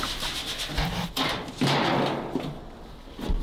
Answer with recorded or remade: recorded